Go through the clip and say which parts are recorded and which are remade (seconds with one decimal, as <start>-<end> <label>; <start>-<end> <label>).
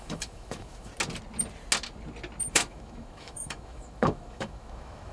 0.0-0.9 remade; 0.9-2.5 recorded; 2.5-5.1 remade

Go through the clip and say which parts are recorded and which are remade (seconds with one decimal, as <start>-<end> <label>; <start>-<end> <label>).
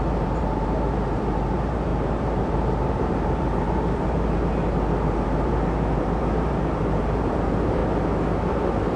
0.0-7.8 remade; 7.8-8.5 recorded; 8.5-9.0 remade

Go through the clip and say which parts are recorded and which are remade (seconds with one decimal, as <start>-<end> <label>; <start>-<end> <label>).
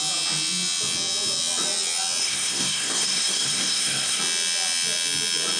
0.0-2.2 recorded; 2.2-4.2 remade; 4.2-5.6 recorded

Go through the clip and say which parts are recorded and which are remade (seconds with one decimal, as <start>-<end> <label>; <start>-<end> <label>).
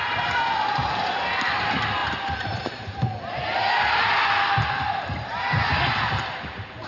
0.0-6.9 recorded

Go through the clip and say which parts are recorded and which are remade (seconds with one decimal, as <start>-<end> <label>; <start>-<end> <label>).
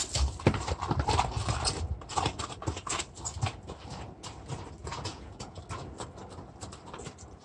0.0-4.8 recorded; 4.8-5.6 remade; 5.6-7.4 recorded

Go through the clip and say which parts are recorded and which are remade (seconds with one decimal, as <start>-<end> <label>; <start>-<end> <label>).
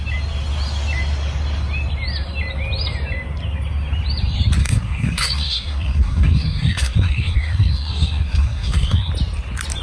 0.0-4.6 recorded; 4.6-9.1 remade; 9.1-9.8 recorded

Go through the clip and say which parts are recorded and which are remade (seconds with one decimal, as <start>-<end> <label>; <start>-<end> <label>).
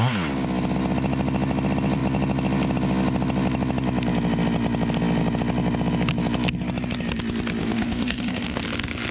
0.0-7.6 recorded; 7.6-8.6 remade; 8.6-9.1 recorded